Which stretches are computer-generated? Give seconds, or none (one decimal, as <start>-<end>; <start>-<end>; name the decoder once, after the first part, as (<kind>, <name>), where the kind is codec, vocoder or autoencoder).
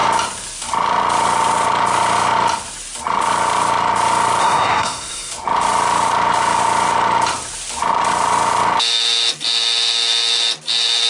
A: 4.4-5.3 (codec, SNAC)